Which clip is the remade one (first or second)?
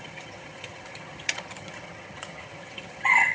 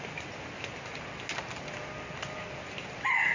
first